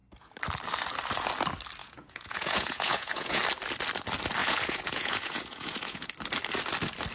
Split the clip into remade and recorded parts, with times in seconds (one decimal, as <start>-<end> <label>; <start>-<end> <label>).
0.0-1.8 recorded; 1.8-3.4 remade; 3.4-4.4 recorded; 4.4-6.1 remade; 6.1-7.1 recorded